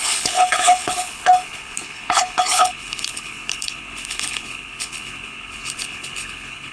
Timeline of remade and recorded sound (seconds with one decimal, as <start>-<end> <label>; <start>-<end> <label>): 0.0-6.7 remade